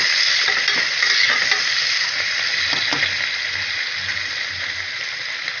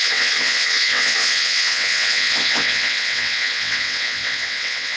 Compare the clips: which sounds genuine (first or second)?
first